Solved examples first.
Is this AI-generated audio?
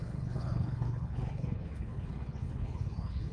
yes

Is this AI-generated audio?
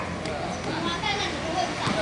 no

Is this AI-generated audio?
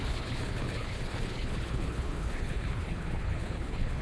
yes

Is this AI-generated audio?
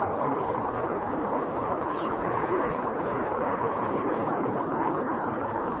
yes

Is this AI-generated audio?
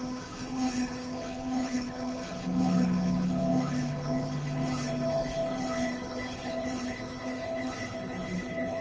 yes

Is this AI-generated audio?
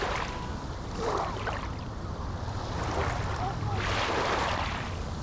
no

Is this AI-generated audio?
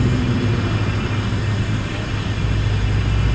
no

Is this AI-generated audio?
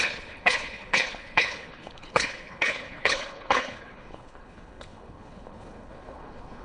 yes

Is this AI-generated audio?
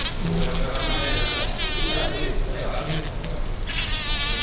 no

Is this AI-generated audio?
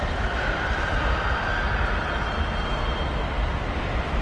no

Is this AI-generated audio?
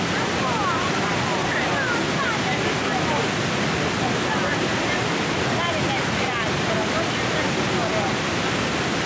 no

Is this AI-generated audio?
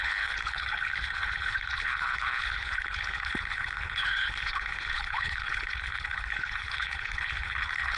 yes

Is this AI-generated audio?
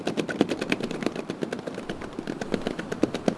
no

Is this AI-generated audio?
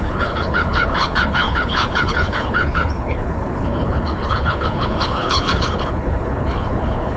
yes